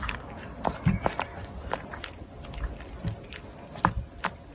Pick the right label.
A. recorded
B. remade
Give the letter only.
A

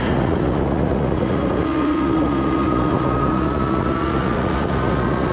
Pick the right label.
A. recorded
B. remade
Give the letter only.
B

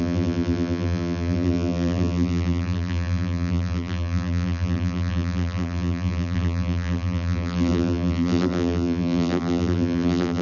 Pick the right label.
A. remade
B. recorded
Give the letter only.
A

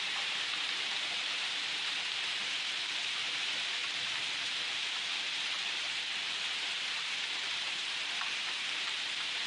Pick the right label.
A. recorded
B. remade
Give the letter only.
B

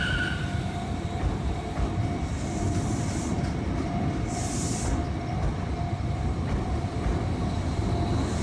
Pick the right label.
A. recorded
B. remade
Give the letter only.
B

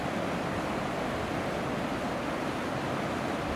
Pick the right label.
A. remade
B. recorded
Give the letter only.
B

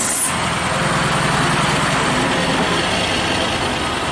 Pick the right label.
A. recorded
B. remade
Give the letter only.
A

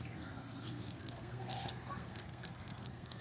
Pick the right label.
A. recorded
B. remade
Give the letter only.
B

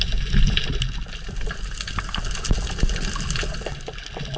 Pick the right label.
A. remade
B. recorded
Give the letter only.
B